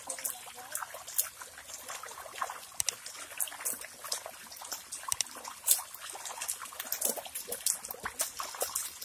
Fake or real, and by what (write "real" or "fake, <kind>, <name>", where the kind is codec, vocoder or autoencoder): real